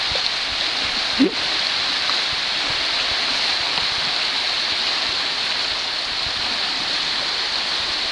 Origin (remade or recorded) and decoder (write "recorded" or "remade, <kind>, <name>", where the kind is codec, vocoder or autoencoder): recorded